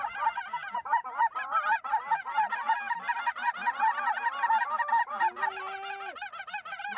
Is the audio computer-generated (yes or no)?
no